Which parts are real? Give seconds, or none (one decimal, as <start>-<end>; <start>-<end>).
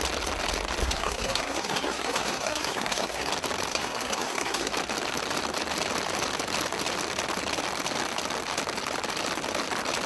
0.0-0.8; 3.3-3.7; 4.7-10.1